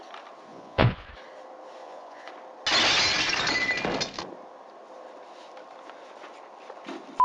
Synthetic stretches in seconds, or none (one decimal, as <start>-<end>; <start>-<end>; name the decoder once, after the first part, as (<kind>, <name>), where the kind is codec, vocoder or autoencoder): 0.5-1.1 (vocoder, Vocos); 1.8-2.3